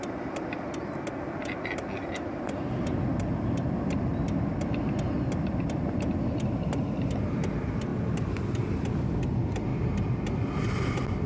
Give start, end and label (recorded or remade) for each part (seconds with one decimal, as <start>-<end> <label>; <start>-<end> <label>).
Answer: 0.0-9.7 recorded; 9.7-10.2 remade; 10.2-11.3 recorded